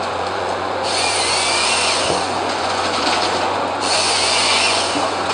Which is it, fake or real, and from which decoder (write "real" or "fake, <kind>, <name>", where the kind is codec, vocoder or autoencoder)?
fake, vocoder, Vocos